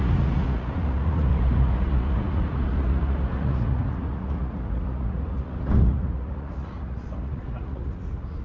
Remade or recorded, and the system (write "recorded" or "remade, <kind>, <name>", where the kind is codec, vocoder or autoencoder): remade, vocoder, Vocos